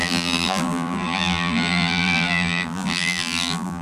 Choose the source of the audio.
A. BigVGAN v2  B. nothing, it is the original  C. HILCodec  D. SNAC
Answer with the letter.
A